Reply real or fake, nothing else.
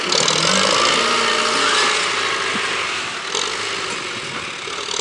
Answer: real